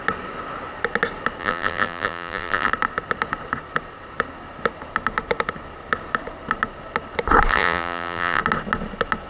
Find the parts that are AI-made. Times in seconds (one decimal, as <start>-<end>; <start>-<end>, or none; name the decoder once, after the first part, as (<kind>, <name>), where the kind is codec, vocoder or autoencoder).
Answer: 1.4-2.7 (vocoder, BigVGAN v2); 7.5-8.4